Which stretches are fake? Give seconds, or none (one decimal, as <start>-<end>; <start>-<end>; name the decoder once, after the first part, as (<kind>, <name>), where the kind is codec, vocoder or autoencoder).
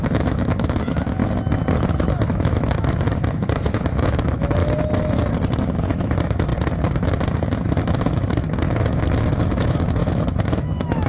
0.0-1.2 (autoencoder, DAC-VAE); 1.8-4.6; 5.6-6.5; 7.6-11.1